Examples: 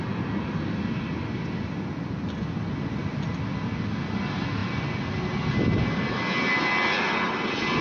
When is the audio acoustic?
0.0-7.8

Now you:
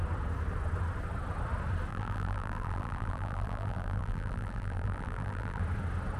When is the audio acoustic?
0.0-1.9; 5.6-6.2